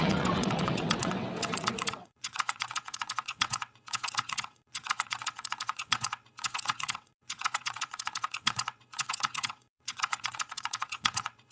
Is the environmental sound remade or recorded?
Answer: remade